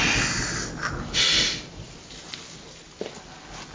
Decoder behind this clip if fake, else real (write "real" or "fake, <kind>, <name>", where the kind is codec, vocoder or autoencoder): real